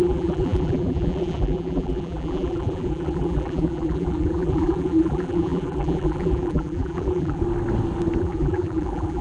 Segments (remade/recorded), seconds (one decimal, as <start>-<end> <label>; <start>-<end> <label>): 0.0-7.4 remade; 7.4-8.2 recorded; 8.2-9.2 remade